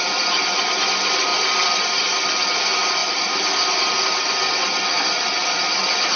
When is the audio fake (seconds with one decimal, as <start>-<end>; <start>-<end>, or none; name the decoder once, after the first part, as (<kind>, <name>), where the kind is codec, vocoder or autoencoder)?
none